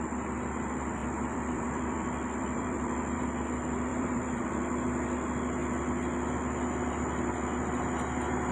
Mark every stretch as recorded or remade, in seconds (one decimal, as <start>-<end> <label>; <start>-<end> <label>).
0.0-1.0 recorded; 1.0-3.2 remade; 3.2-3.9 recorded; 3.9-4.5 remade; 4.5-8.5 recorded